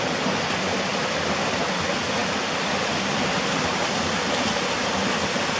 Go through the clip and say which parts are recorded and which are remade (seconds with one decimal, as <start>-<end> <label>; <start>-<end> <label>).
0.0-5.6 recorded